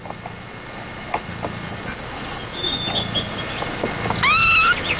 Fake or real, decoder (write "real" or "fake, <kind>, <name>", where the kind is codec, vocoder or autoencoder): real